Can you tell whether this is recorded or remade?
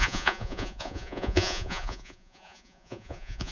remade